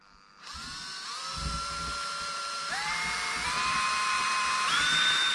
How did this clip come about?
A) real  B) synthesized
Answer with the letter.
B